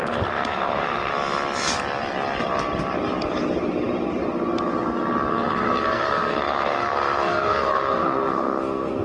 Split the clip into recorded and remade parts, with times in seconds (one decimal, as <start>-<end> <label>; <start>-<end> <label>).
0.0-1.1 remade; 1.1-5.3 recorded; 5.3-9.0 remade